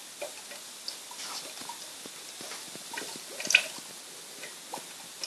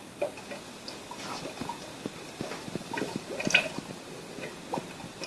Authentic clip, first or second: first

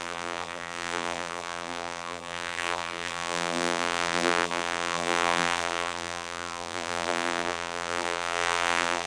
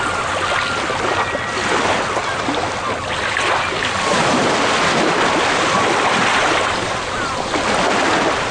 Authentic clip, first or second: second